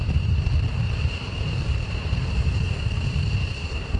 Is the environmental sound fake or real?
fake